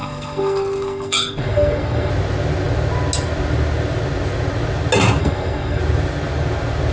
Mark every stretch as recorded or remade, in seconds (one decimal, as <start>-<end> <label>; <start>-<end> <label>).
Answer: 0.0-2.1 remade; 2.1-5.2 recorded; 5.2-5.8 remade; 5.8-6.9 recorded